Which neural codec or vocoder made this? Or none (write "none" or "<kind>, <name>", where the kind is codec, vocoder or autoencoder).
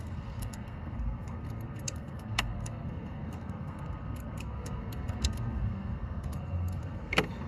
codec, SNAC